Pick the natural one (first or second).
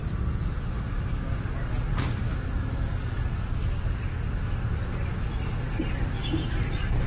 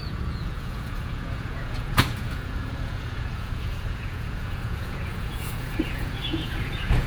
first